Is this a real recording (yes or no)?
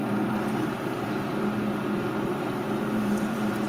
no